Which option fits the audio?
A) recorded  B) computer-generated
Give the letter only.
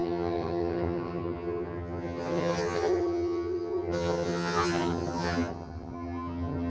B